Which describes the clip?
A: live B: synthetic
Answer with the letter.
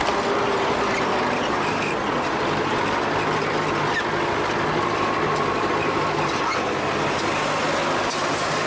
A